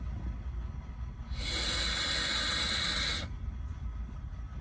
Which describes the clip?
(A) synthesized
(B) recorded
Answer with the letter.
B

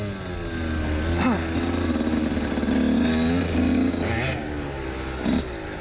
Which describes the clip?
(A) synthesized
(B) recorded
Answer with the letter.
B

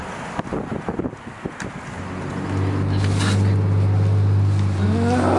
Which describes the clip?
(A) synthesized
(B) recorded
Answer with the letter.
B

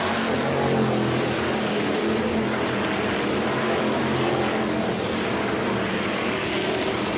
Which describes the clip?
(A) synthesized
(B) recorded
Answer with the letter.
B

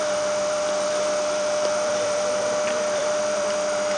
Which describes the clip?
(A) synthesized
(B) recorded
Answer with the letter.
A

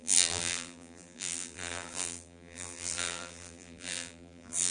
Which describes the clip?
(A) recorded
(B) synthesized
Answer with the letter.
B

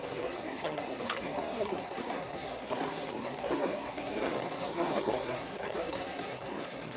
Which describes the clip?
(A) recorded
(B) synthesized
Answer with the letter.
B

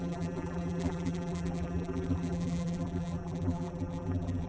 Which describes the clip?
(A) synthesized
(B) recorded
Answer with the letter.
A